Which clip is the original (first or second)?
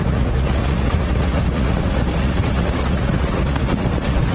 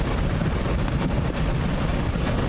second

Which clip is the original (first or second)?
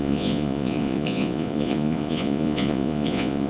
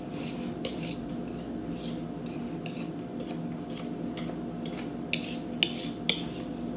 second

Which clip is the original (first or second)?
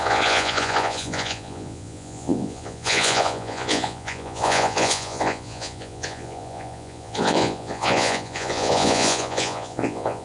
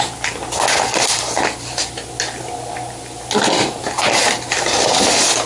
second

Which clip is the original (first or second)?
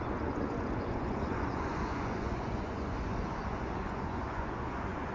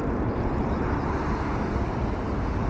second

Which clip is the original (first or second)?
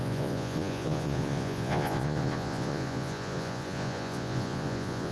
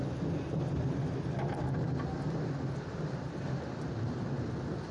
second